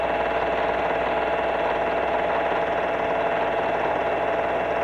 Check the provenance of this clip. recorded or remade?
recorded